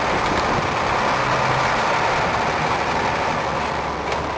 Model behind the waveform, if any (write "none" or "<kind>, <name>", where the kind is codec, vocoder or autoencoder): none